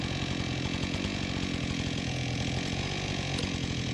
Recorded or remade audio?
remade